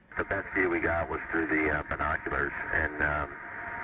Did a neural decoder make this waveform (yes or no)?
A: no